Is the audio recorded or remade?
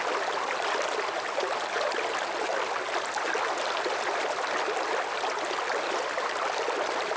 recorded